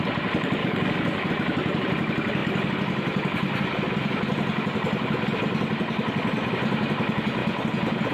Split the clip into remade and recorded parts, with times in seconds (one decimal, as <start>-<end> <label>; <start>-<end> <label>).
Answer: 0.0-0.6 recorded; 0.6-1.3 remade; 1.3-8.1 recorded